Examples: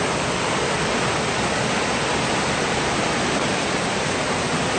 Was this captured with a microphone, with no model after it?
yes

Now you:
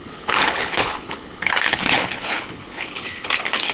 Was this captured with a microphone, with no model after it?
no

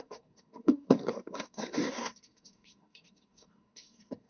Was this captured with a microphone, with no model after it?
no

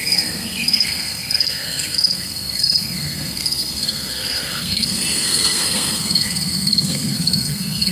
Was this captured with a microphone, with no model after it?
no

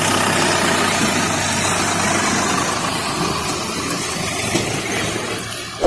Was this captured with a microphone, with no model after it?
yes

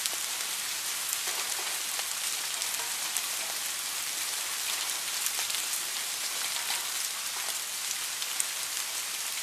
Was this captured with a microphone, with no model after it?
yes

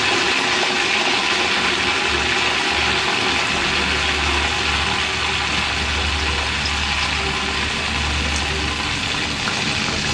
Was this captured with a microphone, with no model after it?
yes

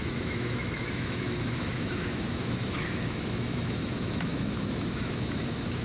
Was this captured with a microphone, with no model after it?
no